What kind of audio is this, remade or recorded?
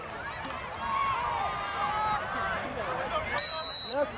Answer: recorded